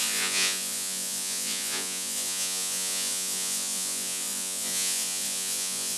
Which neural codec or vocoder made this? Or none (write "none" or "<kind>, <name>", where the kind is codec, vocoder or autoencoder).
vocoder, Vocos